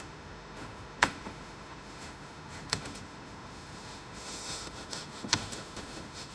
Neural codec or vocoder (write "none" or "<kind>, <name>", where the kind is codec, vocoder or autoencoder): autoencoder, DAC-VAE